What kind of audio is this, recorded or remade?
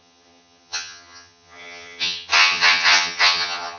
remade